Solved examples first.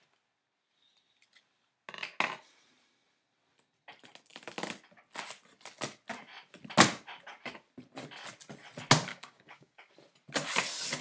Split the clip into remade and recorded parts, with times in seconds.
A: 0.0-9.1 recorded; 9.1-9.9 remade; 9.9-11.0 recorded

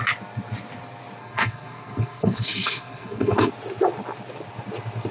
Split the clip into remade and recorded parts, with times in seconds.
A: 0.0-1.2 recorded; 1.2-3.5 remade; 3.5-5.1 recorded

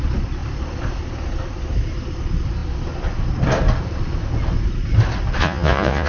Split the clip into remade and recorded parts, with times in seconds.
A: 0.0-5.4 recorded; 5.4-6.1 remade

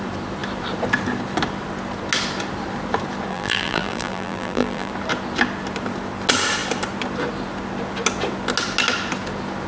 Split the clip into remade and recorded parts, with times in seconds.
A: 0.0-3.3 recorded; 3.3-4.9 remade; 4.9-9.7 recorded

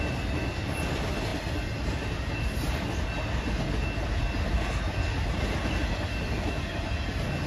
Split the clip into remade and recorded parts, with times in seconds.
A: 0.0-7.5 recorded